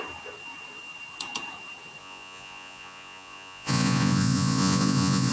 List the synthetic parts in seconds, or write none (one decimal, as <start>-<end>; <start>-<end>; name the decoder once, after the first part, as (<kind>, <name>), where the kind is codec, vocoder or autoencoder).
2.0-5.3 (vocoder, Vocos)